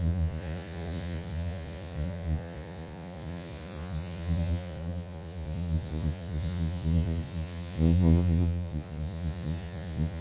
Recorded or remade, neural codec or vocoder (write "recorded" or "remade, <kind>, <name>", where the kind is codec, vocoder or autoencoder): remade, vocoder, Vocos